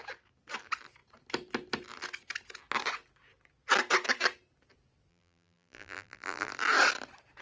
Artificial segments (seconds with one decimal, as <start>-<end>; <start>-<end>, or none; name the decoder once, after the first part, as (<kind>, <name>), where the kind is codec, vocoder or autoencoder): 5.1-6.5 (vocoder, BigVGAN v2)